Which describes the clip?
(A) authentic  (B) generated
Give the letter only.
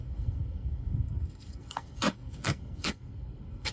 B